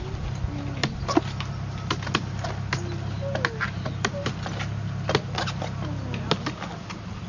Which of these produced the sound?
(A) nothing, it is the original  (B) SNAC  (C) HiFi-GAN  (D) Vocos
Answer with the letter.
A